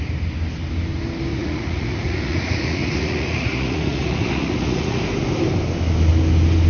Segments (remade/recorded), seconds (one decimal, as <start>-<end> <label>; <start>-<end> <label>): 0.0-1.3 recorded; 1.3-5.0 remade; 5.0-6.7 recorded